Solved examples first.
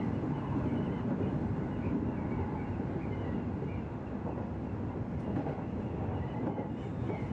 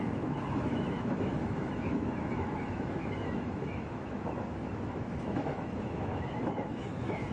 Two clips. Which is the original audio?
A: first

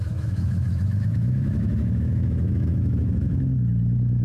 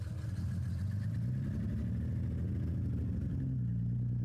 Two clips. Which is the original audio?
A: second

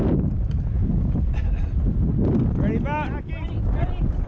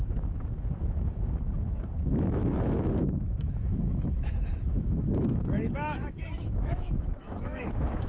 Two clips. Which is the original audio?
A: first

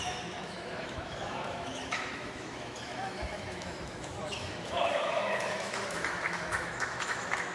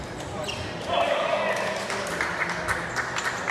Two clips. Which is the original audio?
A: second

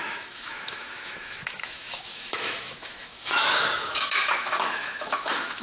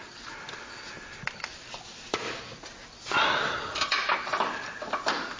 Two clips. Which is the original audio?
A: second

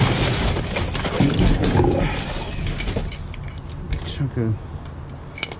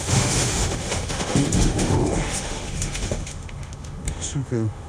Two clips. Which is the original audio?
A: first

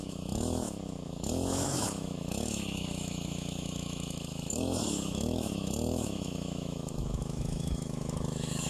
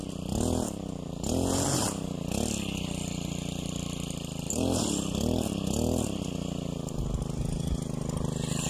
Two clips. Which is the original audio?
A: second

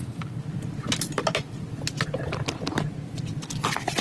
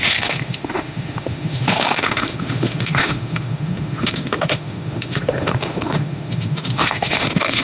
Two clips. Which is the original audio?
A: first